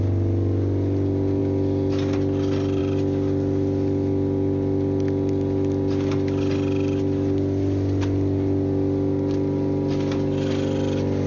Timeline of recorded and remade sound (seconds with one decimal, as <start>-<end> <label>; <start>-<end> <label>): 0.0-11.3 recorded